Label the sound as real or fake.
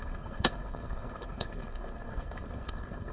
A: fake